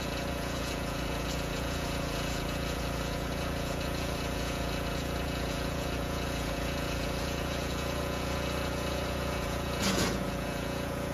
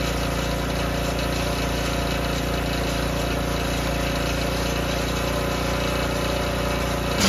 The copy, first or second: first